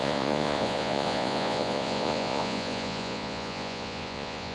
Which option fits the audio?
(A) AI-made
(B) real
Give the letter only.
A